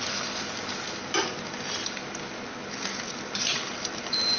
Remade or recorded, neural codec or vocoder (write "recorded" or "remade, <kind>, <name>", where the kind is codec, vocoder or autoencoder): recorded